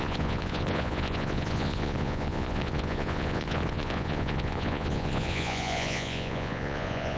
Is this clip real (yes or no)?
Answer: no